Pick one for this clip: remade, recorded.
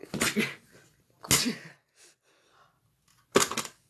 recorded